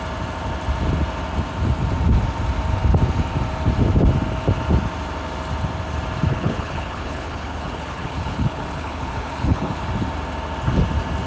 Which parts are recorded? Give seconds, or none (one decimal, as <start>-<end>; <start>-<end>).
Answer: 0.0-6.3; 9.9-11.3